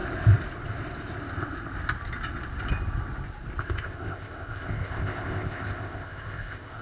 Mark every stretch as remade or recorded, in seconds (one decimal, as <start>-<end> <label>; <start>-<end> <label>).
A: 0.0-3.6 recorded; 3.6-6.8 remade